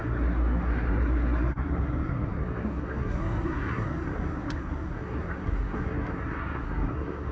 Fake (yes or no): yes